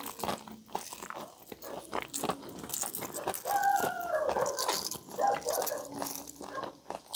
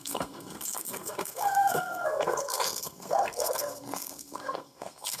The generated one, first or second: second